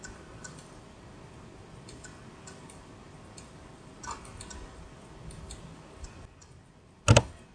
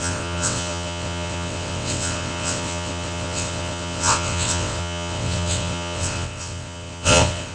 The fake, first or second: second